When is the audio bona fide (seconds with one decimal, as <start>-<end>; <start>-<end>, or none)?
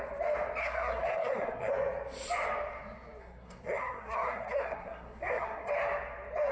0.0-0.6; 1.7-3.2; 5.7-6.5